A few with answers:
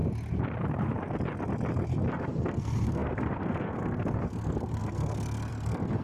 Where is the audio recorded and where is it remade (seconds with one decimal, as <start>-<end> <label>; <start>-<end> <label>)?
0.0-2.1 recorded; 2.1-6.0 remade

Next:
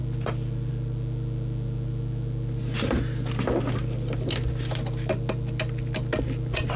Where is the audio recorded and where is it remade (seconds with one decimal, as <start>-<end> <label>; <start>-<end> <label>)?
0.0-6.8 recorded

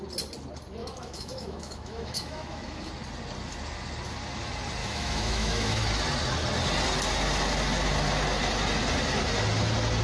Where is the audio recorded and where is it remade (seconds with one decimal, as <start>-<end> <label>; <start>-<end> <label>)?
0.0-0.8 recorded; 0.8-2.9 remade; 2.9-4.8 recorded; 4.8-5.8 remade; 5.8-10.0 recorded

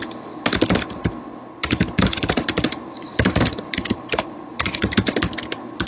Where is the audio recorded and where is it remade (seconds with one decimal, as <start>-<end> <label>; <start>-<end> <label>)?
0.0-1.6 recorded; 1.6-5.1 remade; 5.1-5.9 recorded

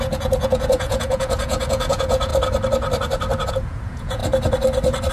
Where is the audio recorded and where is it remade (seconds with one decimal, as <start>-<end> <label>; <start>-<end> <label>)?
0.0-2.3 remade; 2.3-3.5 recorded; 3.5-4.2 remade; 4.2-5.1 recorded

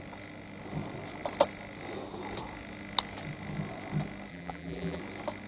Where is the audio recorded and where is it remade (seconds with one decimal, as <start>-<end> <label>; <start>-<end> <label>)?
0.0-4.3 recorded; 4.3-5.0 remade; 5.0-5.5 recorded